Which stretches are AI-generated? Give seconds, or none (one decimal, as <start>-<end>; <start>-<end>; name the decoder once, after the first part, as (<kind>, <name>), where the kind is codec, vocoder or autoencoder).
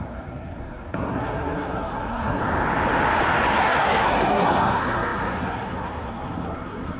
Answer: 0.0-2.4 (codec, SNAC); 3.6-7.0